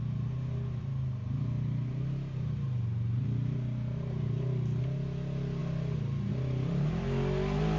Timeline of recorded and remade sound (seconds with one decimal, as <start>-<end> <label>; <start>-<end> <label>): 0.0-7.8 recorded